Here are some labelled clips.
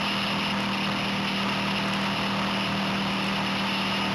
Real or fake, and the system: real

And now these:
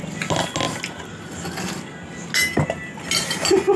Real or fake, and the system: real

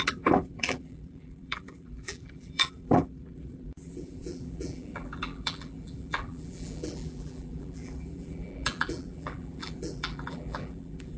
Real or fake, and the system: fake, vocoder, BigVGAN v2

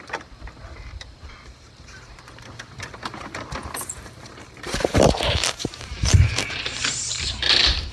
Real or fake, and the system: fake, vocoder, BigVGAN v2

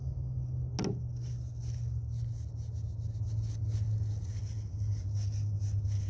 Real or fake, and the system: real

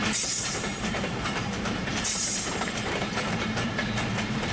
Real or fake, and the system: fake, vocoder, BigVGAN v2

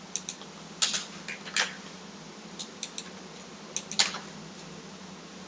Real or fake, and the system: real